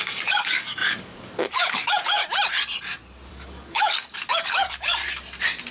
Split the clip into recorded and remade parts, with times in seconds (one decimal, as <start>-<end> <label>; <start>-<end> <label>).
0.0-2.2 remade; 2.2-3.3 recorded; 3.3-5.0 remade; 5.0-5.7 recorded